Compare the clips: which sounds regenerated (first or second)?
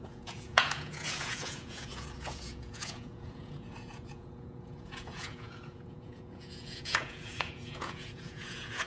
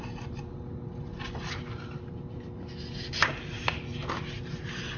first